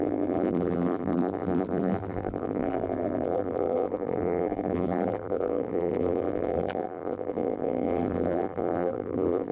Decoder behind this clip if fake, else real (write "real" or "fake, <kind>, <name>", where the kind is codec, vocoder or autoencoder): fake, vocoder, BigVGAN v2